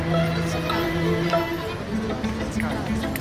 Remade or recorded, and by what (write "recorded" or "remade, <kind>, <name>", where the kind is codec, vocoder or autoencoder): recorded